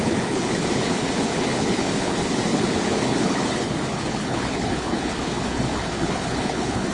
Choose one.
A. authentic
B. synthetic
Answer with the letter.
B